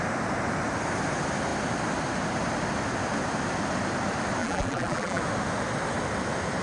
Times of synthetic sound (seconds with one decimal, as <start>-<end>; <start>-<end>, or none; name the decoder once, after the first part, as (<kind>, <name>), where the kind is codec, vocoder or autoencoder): 4.4-5.2 (vocoder, BigVGAN v2)